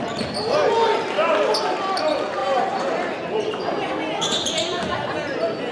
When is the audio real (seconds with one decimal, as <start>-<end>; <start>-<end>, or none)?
0.0-2.4; 3.9-5.7